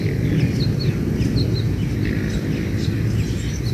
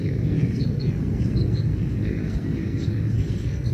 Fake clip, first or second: second